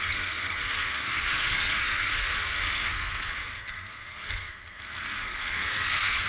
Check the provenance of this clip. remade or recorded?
remade